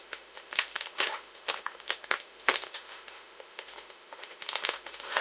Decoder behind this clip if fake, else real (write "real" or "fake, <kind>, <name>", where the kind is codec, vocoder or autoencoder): fake, autoencoder, DAC-VAE